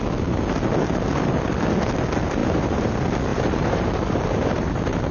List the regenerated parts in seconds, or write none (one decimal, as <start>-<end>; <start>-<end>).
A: 2.4-2.9; 3.3-5.1